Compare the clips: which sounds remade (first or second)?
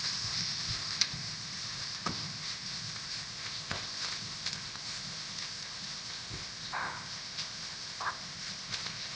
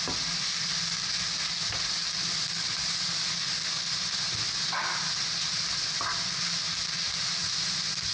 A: first